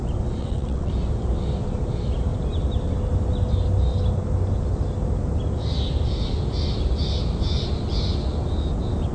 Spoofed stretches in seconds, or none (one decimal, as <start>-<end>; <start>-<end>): 0.4-0.9